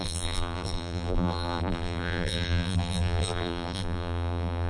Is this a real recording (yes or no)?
no